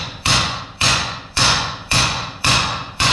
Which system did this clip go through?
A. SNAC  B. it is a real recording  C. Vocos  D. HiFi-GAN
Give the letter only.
C